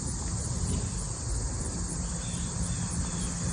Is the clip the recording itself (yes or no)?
yes